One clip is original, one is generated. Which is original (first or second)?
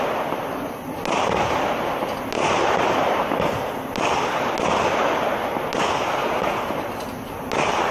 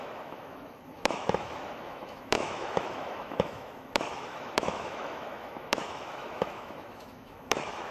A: first